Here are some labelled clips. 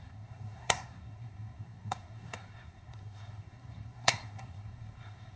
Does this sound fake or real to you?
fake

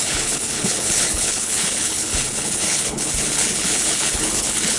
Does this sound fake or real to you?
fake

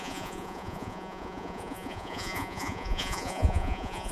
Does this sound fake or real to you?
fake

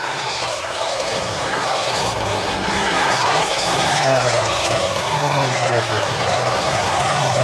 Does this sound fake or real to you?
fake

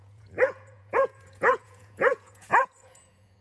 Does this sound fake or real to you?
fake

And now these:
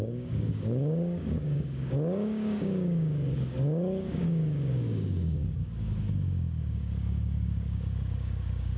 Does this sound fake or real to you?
fake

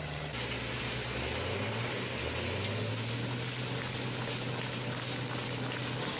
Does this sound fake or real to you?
real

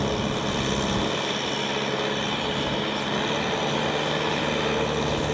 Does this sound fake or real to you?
real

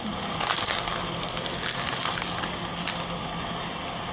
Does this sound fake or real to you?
real